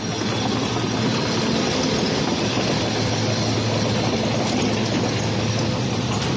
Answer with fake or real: real